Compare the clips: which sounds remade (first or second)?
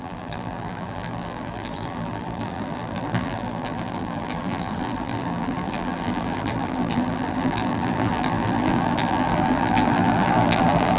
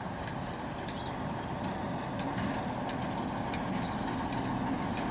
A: first